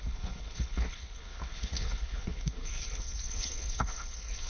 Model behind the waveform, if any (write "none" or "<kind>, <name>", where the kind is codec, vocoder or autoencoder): codec, HILCodec